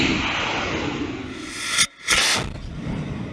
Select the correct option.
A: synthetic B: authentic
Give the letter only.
B